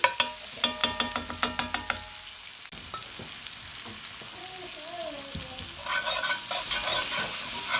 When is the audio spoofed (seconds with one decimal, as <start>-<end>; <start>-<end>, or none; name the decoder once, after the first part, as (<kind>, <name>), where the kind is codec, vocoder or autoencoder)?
none